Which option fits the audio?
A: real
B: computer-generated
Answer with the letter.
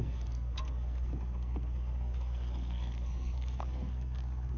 B